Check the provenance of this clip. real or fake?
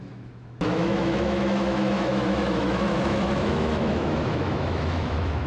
fake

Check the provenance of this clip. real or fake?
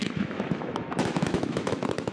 fake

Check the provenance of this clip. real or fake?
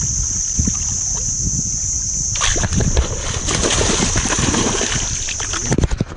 real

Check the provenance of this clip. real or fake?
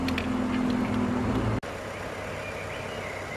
real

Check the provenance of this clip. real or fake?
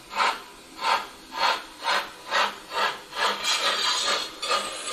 real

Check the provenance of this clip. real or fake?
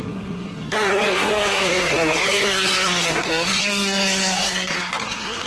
fake